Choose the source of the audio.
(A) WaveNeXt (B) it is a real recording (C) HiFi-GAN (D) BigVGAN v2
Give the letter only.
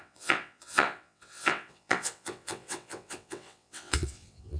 A